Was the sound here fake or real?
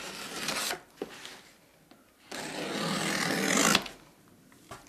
real